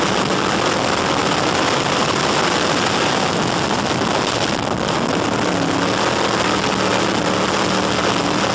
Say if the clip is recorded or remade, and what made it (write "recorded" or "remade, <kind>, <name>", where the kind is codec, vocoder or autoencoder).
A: recorded